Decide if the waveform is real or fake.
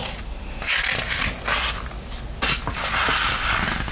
real